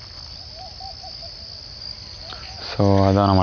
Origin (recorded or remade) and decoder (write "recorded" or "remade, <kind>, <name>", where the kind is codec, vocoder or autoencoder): recorded